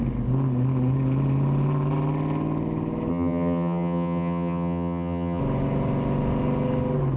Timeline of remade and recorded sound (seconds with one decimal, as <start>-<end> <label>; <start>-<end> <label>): 0.0-3.1 recorded; 3.1-5.4 remade; 5.4-7.2 recorded